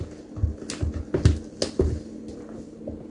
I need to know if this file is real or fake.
real